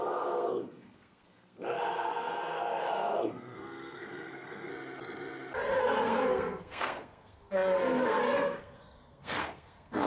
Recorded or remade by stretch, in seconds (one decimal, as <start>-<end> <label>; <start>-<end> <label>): 0.0-4.7 remade; 4.7-5.8 recorded; 5.8-10.1 remade